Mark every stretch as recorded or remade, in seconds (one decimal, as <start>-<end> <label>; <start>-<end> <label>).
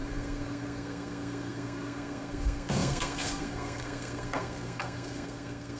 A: 0.0-5.8 remade